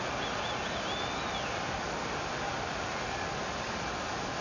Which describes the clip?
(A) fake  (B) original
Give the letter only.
B